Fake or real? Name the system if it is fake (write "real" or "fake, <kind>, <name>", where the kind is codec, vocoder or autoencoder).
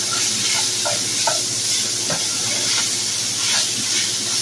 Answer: real